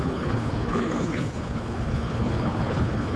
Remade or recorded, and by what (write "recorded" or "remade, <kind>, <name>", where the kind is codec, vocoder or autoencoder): remade, codec, HILCodec